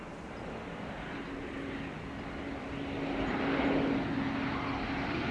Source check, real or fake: real